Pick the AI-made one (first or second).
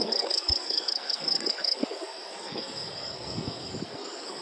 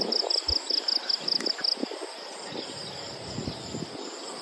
first